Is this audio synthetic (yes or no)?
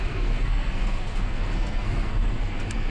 yes